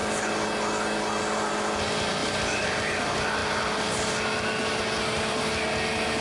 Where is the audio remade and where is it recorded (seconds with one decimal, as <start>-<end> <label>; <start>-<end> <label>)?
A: 0.0-1.2 remade; 1.2-6.2 recorded